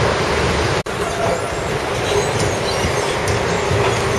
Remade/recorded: recorded